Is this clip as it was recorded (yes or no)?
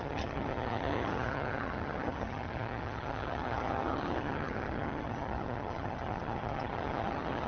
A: no